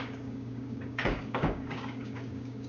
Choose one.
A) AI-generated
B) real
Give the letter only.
A